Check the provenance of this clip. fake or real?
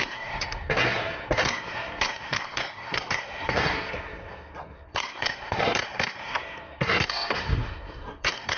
fake